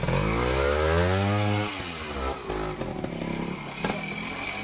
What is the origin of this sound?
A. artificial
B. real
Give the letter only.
B